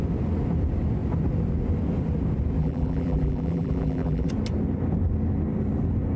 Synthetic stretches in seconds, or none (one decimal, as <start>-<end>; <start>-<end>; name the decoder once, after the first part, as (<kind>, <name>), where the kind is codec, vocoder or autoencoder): 2.6-4.3 (vocoder, BigVGAN v2)